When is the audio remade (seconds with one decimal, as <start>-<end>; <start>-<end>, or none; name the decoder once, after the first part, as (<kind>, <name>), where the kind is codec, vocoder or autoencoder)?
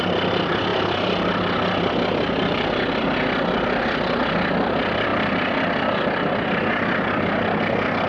0.0-8.1 (vocoder, BigVGAN v2)